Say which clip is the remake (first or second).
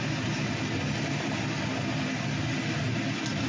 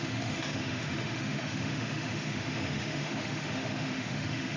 second